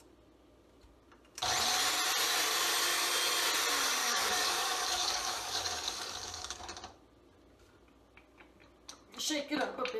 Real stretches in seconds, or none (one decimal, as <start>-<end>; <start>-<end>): 0.0-4.0; 6.6-10.0